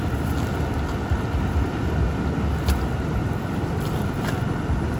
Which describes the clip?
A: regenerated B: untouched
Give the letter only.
B